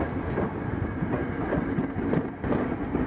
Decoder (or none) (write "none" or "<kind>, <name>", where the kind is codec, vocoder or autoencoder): none